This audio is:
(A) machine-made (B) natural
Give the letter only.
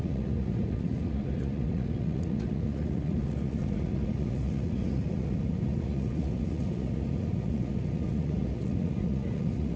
A